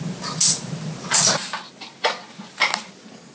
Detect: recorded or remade recorded